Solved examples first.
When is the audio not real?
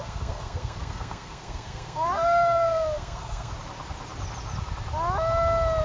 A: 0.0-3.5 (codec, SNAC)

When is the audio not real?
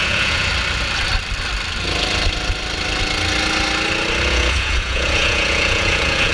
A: 0.0-0.5 (vocoder, Vocos); 4.3-6.3